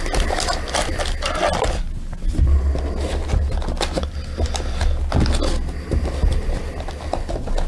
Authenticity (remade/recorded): recorded